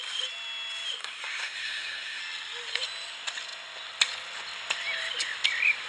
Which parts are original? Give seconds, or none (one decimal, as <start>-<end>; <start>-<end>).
0.0-1.0; 2.2-5.9